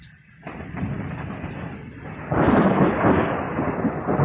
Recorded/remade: recorded